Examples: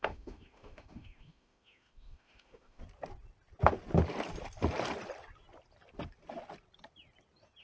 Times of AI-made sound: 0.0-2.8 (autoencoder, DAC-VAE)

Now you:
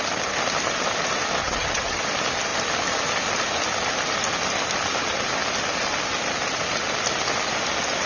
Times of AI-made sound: 1.4-2.0 (vocoder, HiFi-GAN)